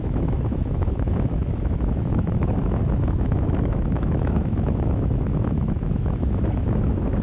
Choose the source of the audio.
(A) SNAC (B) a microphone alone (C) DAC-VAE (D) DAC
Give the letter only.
C